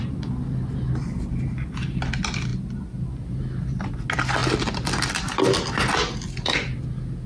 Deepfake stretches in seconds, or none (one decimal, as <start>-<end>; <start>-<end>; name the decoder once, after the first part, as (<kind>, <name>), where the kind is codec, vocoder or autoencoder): none

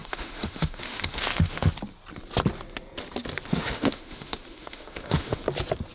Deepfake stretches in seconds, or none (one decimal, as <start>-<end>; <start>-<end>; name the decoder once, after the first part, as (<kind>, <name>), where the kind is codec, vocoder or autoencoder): 0.0-1.7 (autoencoder, DAC-VAE); 3.5-5.4

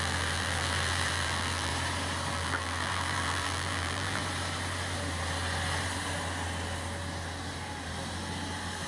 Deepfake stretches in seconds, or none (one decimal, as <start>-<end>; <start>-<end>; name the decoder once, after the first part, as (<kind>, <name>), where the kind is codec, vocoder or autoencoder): 0.0-1.7 (vocoder, BigVGAN v2); 2.3-4.2

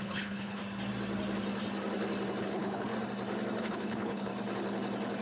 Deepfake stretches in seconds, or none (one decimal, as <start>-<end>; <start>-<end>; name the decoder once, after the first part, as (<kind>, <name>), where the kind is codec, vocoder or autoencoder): 0.0-0.6 (codec, HILCodec); 2.4-2.9; 3.6-4.3

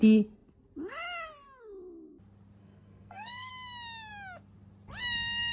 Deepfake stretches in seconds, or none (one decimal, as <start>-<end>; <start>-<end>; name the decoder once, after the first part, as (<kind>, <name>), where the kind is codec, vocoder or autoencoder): 2.6-3.5 (codec, SNAC)